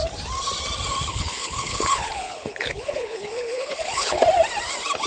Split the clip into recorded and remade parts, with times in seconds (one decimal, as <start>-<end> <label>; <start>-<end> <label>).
0.0-1.1 recorded; 1.1-4.2 remade; 4.2-5.1 recorded